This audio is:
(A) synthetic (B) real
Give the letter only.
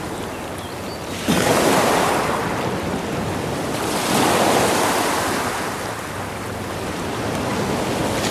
B